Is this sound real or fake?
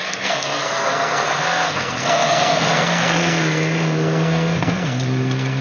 fake